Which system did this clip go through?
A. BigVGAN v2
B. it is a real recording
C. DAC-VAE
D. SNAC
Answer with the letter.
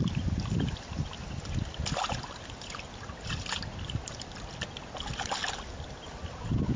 B